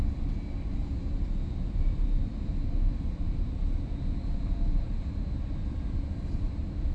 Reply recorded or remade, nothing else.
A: recorded